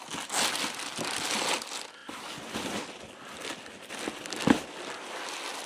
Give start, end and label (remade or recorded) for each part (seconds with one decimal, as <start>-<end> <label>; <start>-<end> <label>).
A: 0.0-5.7 recorded

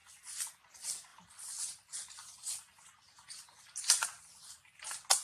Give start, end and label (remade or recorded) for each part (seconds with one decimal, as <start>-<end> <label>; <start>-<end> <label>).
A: 0.0-5.2 recorded

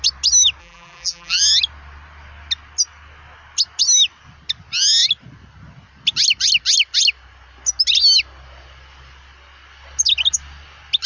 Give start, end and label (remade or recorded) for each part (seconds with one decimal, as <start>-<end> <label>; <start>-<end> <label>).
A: 0.0-0.6 recorded; 0.6-1.4 remade; 1.4-11.1 recorded